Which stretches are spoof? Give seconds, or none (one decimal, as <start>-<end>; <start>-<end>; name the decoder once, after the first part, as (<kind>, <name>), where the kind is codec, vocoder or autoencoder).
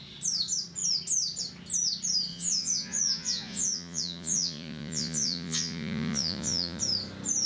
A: 2.3-6.8 (vocoder, Vocos)